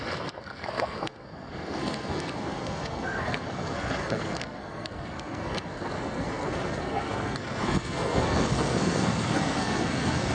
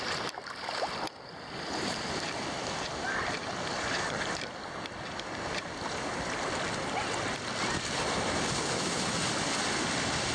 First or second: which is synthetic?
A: first